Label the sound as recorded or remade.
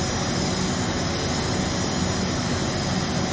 recorded